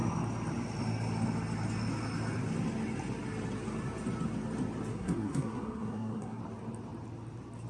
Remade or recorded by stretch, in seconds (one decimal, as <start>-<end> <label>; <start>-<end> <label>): 0.0-4.9 recorded; 4.9-6.4 remade; 6.4-7.7 recorded